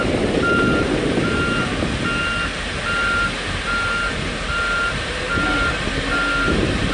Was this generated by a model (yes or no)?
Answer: no